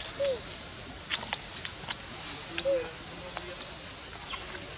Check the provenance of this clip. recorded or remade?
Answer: recorded